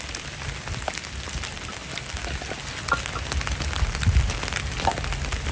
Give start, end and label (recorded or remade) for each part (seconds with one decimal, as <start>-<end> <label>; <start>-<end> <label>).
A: 0.0-5.5 recorded